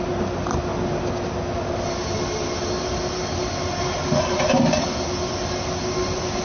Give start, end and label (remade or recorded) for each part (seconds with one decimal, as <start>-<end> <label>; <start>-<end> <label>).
0.0-6.4 recorded